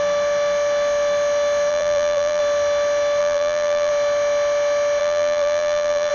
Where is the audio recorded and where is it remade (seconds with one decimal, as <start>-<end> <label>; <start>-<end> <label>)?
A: 0.0-1.7 recorded; 1.7-2.4 remade; 2.4-3.2 recorded; 3.2-3.9 remade; 3.9-5.0 recorded; 5.0-6.1 remade